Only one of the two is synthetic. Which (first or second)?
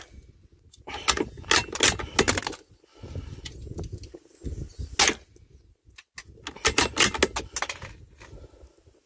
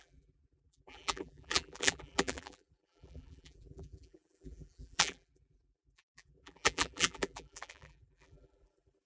second